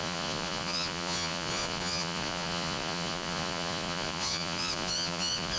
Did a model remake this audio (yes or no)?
yes